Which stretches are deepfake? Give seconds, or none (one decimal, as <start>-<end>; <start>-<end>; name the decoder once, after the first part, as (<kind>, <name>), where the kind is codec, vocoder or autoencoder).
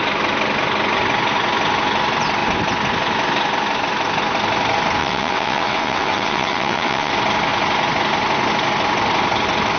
5.0-7.1 (vocoder, WaveNeXt)